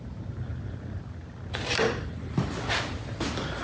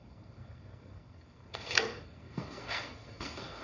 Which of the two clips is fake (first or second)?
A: second